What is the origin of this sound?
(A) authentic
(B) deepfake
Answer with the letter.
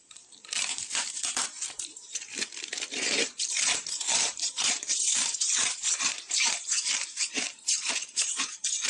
B